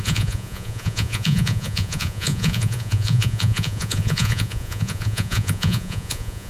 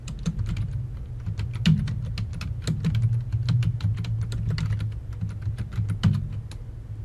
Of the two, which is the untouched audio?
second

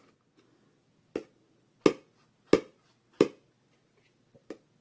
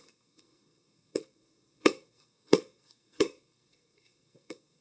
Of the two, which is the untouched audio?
first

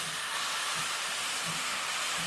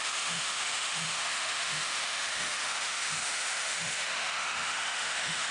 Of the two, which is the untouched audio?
first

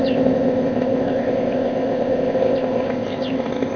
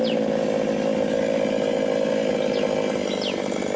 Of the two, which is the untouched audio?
second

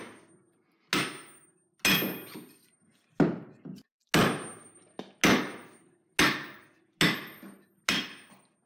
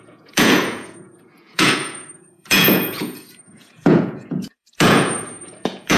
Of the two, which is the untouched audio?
first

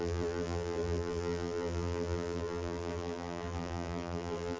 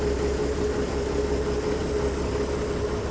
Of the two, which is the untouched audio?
second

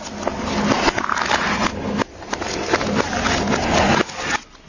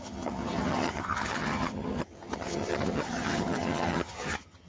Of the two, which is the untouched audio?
first